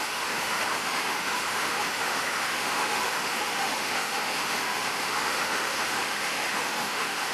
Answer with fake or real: fake